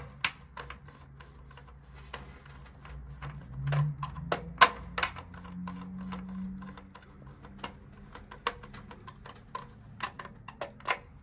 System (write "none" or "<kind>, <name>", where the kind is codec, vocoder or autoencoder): none